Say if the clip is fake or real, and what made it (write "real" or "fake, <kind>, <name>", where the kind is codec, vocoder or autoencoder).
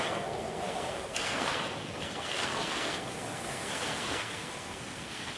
fake, codec, SNAC